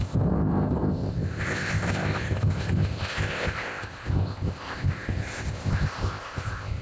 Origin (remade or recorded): remade